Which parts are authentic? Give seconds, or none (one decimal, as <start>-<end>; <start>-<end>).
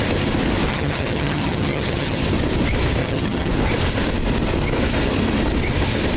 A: 0.0-0.7; 2.2-3.0; 3.5-6.2